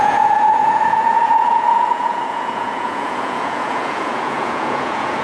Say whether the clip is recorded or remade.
remade